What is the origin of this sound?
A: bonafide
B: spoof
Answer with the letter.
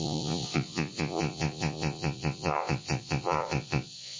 B